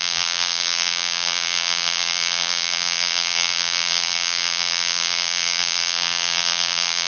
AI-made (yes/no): yes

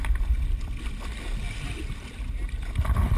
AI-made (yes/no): no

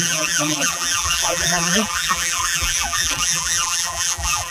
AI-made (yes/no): yes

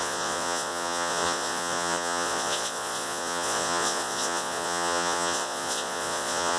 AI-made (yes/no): yes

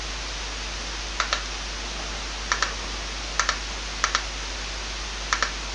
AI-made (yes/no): no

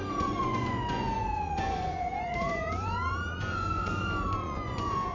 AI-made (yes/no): yes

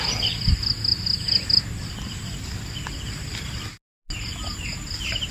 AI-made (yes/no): no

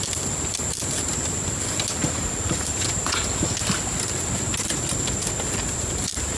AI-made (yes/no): no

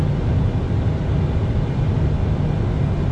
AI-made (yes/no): no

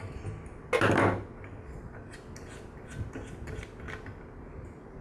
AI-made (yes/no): no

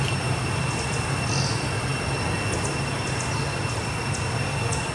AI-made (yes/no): no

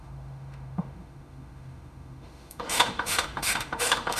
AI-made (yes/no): yes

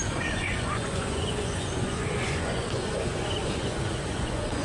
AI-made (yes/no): yes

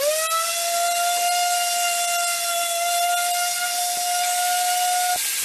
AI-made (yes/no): no